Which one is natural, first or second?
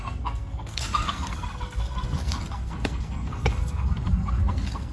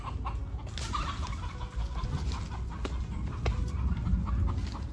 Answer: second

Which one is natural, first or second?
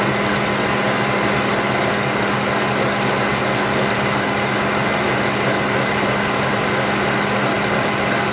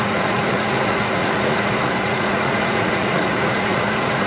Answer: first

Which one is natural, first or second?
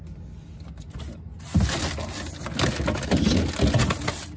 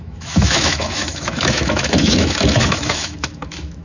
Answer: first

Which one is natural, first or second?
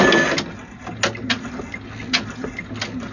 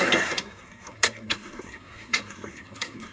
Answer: first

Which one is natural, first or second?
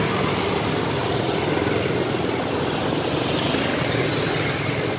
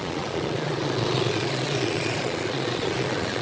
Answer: first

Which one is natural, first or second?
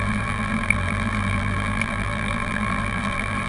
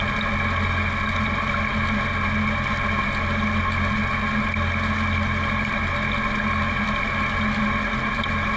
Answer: second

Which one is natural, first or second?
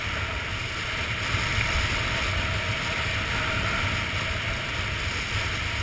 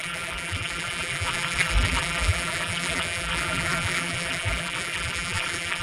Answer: first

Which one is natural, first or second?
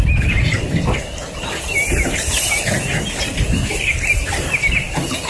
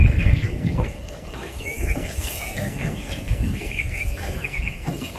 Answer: first